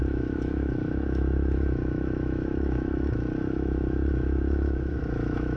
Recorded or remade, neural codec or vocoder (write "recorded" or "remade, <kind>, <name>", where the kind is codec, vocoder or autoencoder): remade, autoencoder, DAC-VAE